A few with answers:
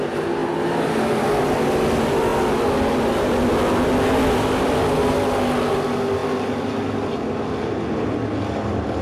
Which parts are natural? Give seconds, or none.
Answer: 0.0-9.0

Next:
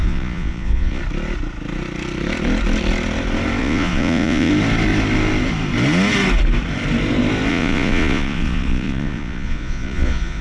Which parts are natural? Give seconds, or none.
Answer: 1.0-3.6; 4.5-7.5

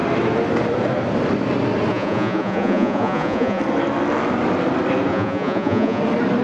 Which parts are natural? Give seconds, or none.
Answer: 0.0-1.9; 3.6-5.1; 6.0-6.4

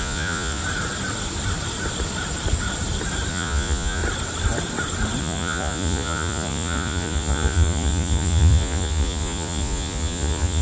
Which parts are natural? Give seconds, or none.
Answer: 0.6-3.3; 4.0-5.2

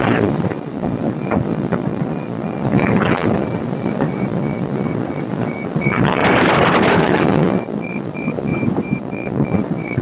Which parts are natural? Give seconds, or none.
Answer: 6.2-7.0; 8.5-9.0

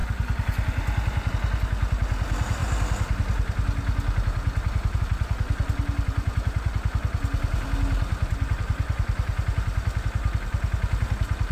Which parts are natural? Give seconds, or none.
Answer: 0.0-11.5